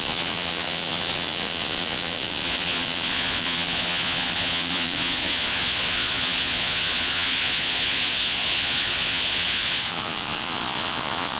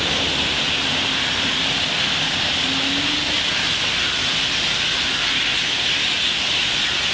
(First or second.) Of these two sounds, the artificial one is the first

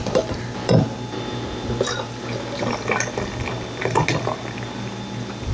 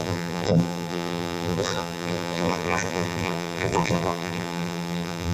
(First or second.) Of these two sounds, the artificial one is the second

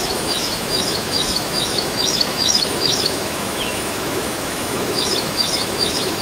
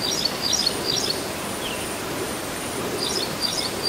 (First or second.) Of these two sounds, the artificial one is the first